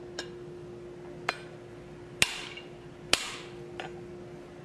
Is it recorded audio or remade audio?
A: recorded